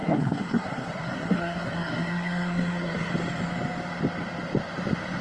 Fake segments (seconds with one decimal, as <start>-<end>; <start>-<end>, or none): 0.0-3.1